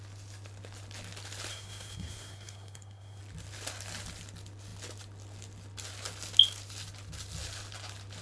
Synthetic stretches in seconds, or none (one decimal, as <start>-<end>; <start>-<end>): 1.5-3.2